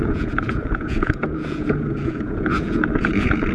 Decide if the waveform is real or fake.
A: fake